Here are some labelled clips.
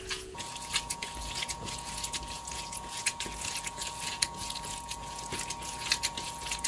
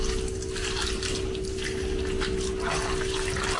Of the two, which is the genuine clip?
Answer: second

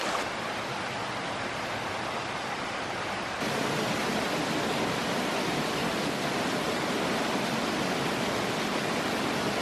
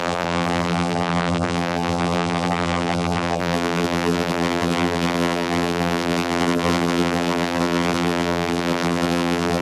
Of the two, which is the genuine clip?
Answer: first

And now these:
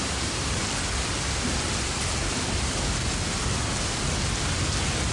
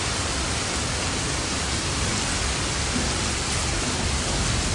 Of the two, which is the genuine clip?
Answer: second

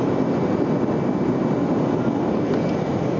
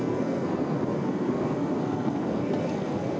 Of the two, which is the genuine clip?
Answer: first